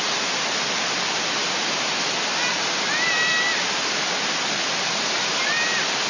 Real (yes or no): yes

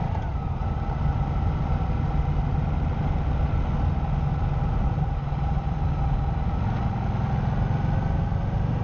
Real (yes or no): yes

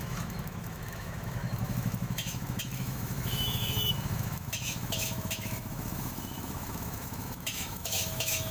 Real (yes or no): no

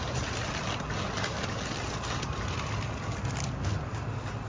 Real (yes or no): yes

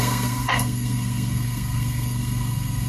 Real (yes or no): no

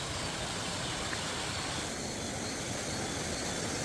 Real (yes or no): yes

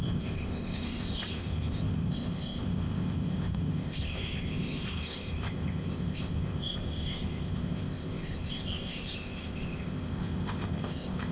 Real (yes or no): no